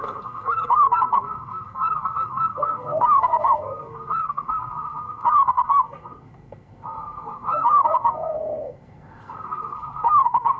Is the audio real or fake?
fake